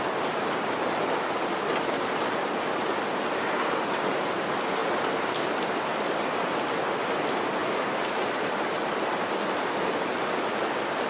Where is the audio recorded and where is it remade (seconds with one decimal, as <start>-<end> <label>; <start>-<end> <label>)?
0.0-11.1 recorded